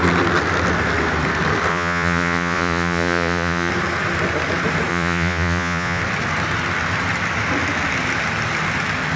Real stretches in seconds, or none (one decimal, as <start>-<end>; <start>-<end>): 0.0-1.7; 3.7-4.9; 6.0-9.2